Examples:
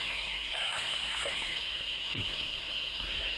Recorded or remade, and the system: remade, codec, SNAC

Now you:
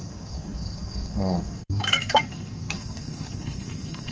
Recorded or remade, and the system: remade, codec, SNAC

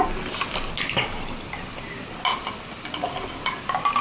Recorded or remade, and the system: recorded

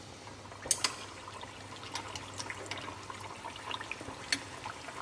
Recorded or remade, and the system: recorded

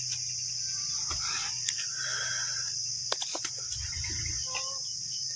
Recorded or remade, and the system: recorded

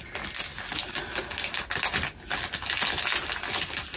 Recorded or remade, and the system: recorded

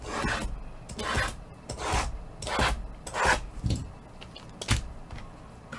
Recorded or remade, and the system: recorded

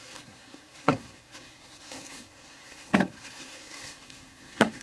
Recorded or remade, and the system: remade, codec, SNAC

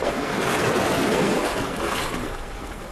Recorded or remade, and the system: remade, codec, SNAC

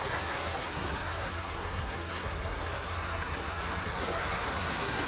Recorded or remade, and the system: remade, codec, SNAC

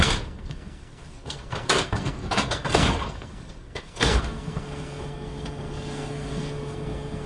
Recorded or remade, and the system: remade, codec, SNAC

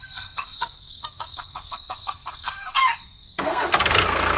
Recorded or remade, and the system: remade, codec, SNAC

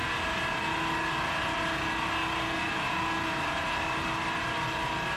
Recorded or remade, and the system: recorded